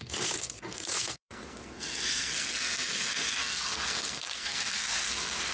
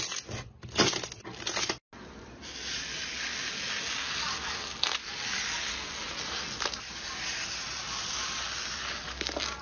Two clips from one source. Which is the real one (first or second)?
second